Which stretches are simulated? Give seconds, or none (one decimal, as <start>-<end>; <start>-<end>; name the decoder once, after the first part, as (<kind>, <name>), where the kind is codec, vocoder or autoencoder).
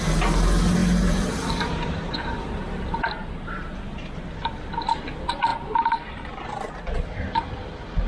0.8-2.5 (vocoder, BigVGAN v2); 5.5-6.7